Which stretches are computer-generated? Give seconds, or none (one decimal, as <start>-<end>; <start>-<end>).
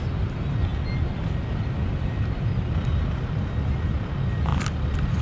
none